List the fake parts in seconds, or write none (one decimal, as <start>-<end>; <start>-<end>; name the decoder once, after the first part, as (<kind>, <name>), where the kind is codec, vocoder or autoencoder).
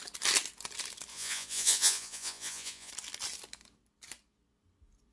1.1-2.9 (vocoder, Vocos)